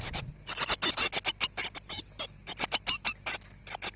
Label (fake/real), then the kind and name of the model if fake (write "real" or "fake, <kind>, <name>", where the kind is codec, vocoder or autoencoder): real